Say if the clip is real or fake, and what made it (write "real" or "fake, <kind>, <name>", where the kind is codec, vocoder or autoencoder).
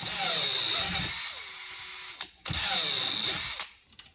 real